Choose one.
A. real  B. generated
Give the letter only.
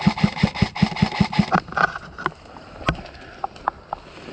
A